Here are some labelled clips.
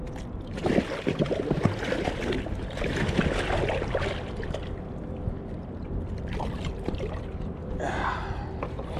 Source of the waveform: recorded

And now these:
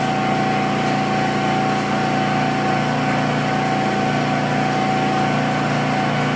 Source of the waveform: recorded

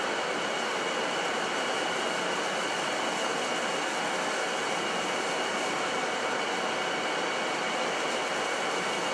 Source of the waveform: recorded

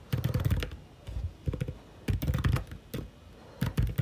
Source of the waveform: recorded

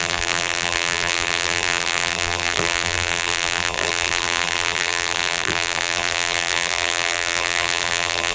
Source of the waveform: remade